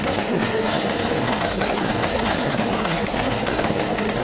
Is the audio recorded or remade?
remade